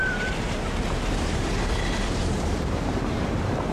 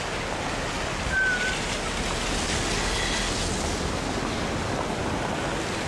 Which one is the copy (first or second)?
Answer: first